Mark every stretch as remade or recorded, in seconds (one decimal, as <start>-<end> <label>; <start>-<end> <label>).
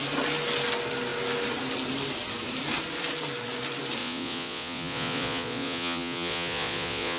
0.0-4.0 recorded; 4.0-7.2 remade